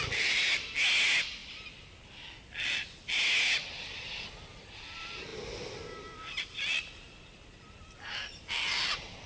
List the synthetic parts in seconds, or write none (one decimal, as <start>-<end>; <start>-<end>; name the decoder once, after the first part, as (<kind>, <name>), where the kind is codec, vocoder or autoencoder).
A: none